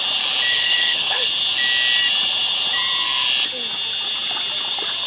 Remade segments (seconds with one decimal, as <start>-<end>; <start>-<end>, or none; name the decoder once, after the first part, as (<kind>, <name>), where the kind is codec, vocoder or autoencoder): 0.5-1.3 (codec, HILCodec)